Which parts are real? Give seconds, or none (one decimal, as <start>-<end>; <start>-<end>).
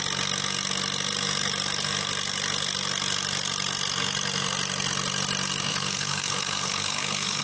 0.0-5.7